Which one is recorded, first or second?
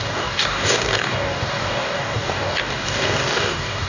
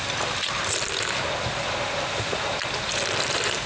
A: second